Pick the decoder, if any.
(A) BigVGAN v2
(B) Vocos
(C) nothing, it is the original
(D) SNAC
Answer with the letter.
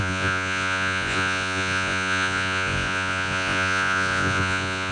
B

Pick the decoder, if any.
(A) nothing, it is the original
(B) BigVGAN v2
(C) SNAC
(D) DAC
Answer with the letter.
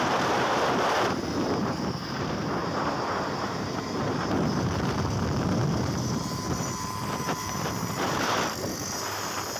B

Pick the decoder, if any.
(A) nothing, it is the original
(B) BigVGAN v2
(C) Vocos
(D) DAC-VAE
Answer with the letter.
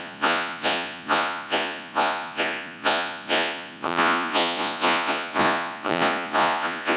C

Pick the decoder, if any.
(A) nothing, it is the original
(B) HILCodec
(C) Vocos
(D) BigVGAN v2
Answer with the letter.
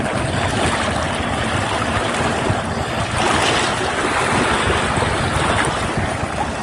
A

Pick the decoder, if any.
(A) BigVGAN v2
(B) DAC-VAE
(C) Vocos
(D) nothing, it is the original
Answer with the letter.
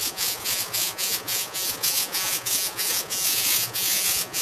C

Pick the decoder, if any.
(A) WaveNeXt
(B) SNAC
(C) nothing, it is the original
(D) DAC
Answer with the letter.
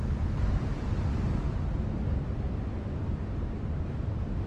C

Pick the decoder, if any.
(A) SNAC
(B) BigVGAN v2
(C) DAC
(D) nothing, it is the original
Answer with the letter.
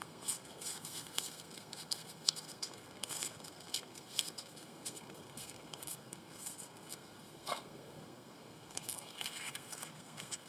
A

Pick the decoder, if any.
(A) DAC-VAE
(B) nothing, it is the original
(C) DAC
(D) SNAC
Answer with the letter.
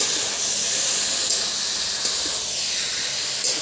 B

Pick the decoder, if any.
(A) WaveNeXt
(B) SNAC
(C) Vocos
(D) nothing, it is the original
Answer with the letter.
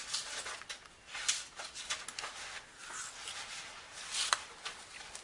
D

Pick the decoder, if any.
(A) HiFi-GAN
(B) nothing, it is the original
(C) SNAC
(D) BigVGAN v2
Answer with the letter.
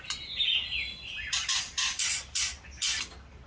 B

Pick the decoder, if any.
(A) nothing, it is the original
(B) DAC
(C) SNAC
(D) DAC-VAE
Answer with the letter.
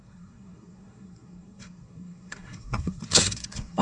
C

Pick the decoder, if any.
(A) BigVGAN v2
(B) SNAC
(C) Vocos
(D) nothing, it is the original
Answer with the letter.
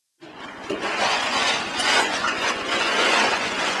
C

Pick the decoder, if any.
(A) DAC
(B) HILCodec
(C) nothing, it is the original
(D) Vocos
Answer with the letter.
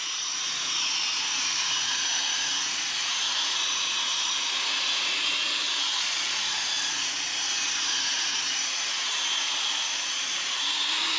D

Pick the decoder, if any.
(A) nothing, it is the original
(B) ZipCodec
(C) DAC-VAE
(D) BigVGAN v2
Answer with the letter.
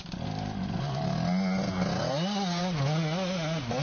A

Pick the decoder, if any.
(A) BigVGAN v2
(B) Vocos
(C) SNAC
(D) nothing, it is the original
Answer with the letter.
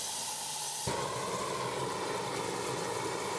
D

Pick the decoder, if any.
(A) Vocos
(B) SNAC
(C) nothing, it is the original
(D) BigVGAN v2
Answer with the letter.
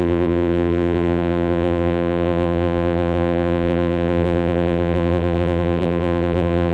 D